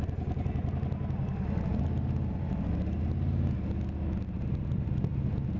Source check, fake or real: real